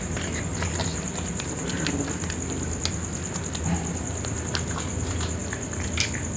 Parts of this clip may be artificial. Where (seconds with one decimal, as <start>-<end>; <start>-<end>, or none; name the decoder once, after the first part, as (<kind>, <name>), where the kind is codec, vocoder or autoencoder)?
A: 0.9-3.5 (vocoder, BigVGAN v2); 5.4-5.9